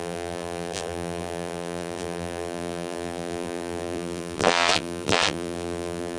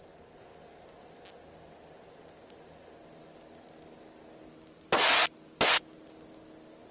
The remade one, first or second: first